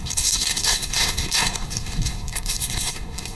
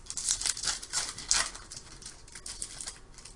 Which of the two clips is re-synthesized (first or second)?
first